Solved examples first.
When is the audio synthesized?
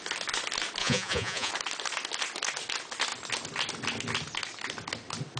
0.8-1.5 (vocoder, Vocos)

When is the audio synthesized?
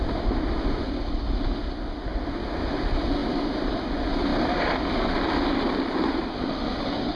none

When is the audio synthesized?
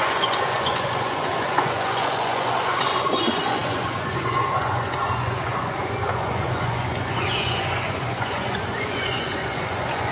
0.0-10.1 (vocoder, Vocos)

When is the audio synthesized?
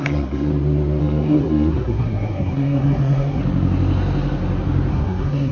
0.0-0.5 (codec, SNAC); 1.0-3.4; 4.9-5.5